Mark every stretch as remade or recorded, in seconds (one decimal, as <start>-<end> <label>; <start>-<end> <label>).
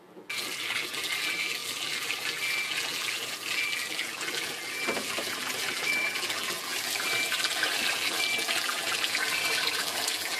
0.0-10.4 remade